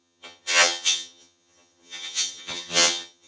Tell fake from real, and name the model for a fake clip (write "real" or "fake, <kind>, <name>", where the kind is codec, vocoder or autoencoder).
fake, vocoder, HiFi-GAN